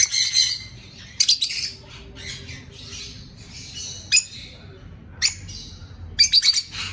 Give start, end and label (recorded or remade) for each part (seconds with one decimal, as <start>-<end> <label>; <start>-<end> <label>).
0.0-6.9 recorded